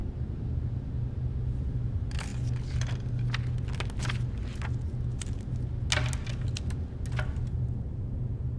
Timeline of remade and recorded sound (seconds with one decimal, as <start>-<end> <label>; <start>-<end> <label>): 0.0-8.6 recorded